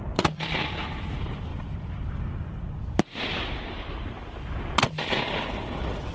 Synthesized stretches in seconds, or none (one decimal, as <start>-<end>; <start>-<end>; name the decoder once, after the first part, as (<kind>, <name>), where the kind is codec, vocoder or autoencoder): none